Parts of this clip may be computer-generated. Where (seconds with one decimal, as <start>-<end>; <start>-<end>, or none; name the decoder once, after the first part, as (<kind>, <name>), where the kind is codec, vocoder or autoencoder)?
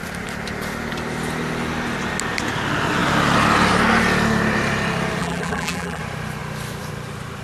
5.2-6.0 (vocoder, BigVGAN v2)